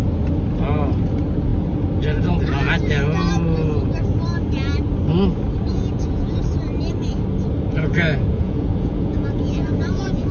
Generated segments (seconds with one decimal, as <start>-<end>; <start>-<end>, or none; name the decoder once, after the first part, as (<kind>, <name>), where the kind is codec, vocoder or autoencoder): 5.7-6.4 (vocoder, Vocos); 7.7-10.3